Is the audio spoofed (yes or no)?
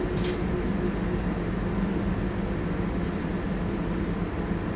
no